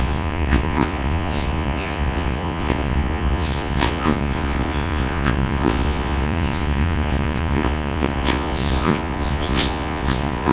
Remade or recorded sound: remade